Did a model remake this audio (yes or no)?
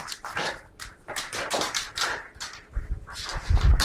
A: no